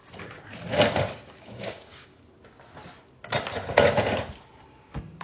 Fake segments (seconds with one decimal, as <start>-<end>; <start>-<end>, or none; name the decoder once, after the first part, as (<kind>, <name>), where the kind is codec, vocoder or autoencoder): 1.1-2.1 (codec, DAC)